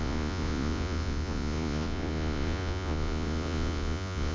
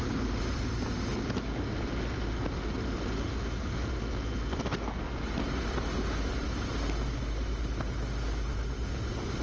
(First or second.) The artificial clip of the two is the first